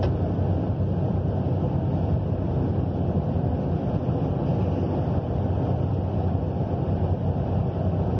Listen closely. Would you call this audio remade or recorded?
remade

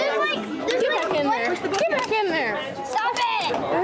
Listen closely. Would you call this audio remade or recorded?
recorded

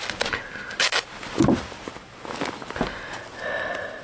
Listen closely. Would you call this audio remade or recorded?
recorded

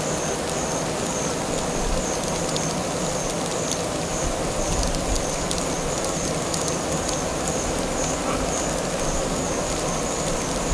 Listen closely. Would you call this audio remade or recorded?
recorded